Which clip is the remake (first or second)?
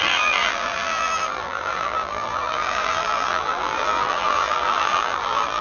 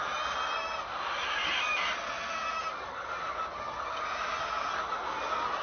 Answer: first